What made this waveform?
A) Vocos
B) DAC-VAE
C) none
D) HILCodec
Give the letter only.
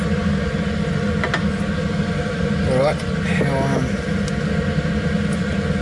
C